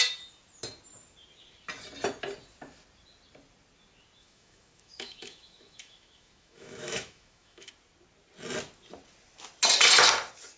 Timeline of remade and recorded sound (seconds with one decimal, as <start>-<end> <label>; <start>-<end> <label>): 0.0-4.2 recorded; 4.2-7.7 remade; 7.7-10.6 recorded